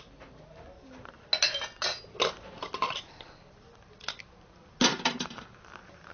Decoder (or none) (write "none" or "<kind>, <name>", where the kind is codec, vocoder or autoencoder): none